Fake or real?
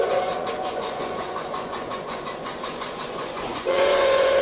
fake